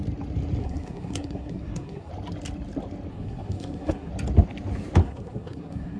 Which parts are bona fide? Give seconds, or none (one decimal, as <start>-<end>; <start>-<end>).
0.0-0.6; 2.1-3.1; 4.1-5.0